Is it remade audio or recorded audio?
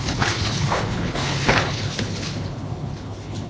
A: remade